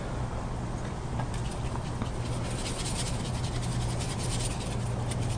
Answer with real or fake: real